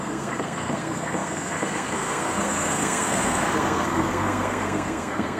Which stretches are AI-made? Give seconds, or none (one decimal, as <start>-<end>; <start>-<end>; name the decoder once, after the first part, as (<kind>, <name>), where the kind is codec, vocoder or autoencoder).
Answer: 0.0-5.4 (codec, SNAC)